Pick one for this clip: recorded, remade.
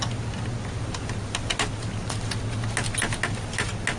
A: recorded